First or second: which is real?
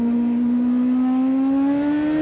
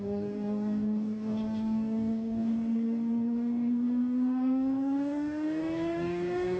first